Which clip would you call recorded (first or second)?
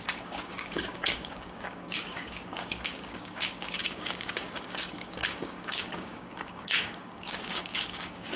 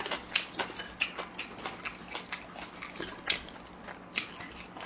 second